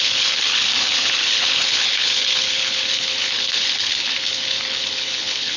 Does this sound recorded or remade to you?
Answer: remade